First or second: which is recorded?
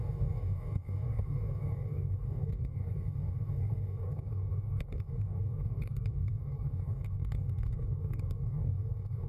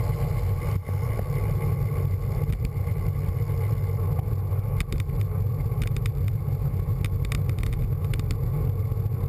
second